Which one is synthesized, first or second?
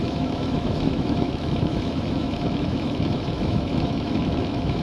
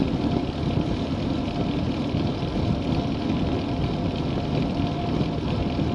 first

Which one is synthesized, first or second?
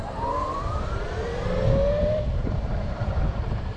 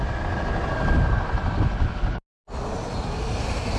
first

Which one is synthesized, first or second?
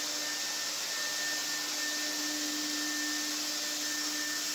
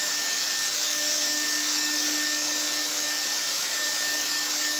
second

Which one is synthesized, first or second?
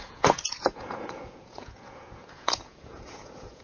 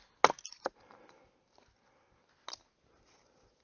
first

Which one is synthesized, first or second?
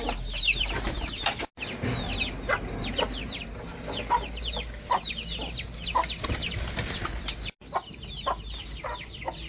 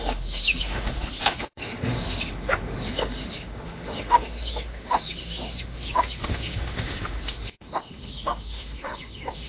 second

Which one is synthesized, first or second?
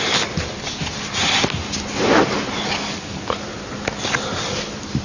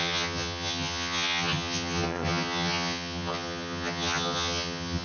second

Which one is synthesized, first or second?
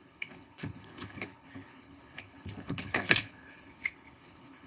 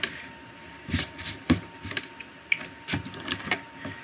first